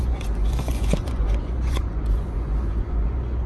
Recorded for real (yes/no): no